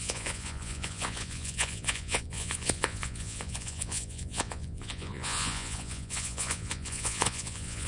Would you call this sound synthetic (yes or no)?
yes